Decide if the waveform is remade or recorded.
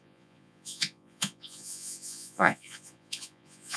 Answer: remade